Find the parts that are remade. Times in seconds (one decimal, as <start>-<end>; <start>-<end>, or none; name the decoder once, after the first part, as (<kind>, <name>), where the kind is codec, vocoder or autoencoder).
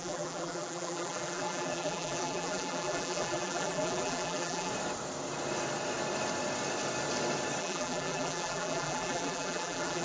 0.0-4.7 (vocoder, BigVGAN v2); 7.6-10.0